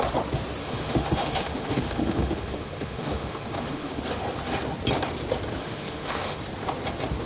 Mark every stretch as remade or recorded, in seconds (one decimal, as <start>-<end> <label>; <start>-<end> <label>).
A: 0.0-0.6 recorded; 0.6-4.0 remade; 4.0-5.6 recorded; 5.6-6.4 remade; 6.4-7.3 recorded